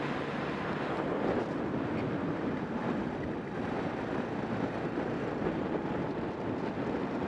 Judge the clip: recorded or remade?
recorded